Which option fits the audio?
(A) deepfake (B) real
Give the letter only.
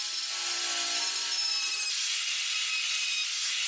B